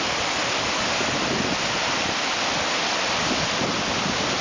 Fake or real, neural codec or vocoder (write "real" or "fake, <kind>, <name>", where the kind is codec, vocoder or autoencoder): real